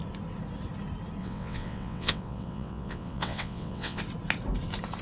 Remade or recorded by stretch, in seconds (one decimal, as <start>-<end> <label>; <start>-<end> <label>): 0.0-1.2 recorded; 1.2-4.0 remade; 4.0-5.0 recorded